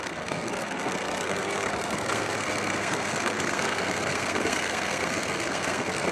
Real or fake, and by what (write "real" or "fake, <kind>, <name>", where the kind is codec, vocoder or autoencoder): fake, codec, SNAC